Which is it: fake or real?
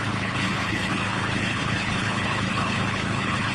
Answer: fake